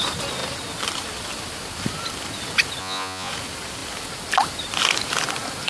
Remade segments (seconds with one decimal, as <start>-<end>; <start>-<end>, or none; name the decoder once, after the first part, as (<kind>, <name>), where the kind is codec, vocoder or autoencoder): 2.8-3.3 (vocoder, Vocos)